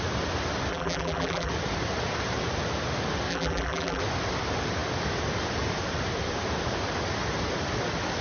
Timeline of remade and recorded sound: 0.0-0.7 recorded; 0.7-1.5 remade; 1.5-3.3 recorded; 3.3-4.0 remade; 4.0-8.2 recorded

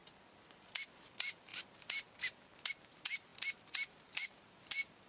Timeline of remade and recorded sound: 0.0-1.1 recorded; 1.1-5.1 remade

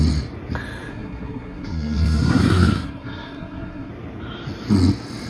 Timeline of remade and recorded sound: 0.0-0.9 recorded; 0.9-3.9 remade; 3.9-5.3 recorded

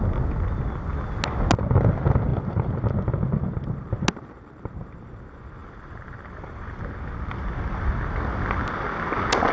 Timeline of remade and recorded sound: 0.0-2.3 recorded; 2.3-2.8 remade; 2.8-5.6 recorded; 5.6-6.8 remade; 6.8-9.5 recorded